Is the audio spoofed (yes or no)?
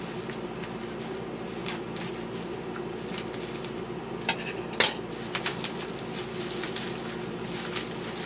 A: no